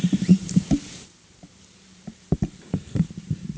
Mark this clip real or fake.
fake